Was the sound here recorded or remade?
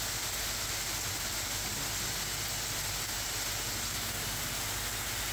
recorded